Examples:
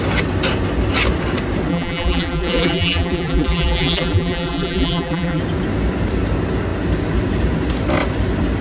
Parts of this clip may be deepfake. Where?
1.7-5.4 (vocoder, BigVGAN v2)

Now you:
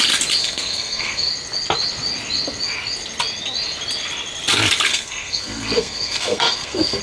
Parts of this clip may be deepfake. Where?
0.4-1.3 (codec, SNAC); 4.9-7.0

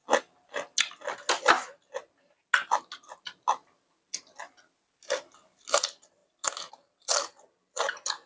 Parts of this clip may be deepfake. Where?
none

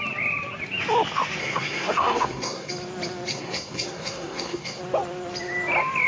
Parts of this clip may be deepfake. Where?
1.4-2.7 (codec, SNAC); 3.3-4.8

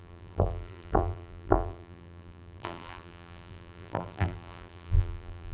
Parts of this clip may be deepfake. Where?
0.0-5.5 (vocoder, BigVGAN v2)